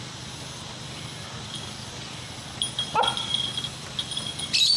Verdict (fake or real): real